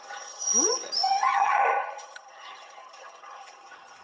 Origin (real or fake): fake